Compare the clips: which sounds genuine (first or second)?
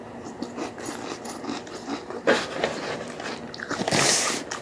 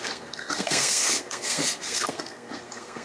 first